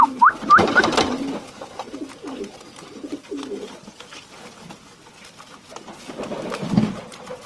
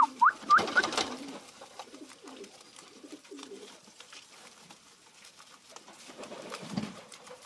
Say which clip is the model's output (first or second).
second